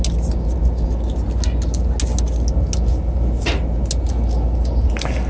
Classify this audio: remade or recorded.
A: recorded